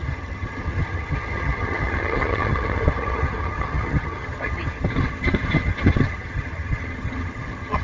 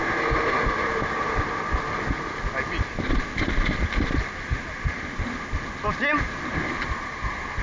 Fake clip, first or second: first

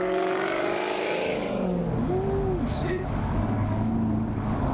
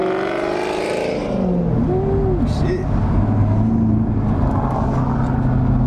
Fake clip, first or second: first